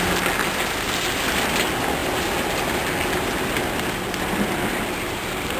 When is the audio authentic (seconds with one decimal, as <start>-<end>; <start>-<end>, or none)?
0.0-5.6